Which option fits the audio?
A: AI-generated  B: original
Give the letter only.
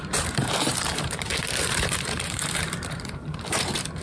A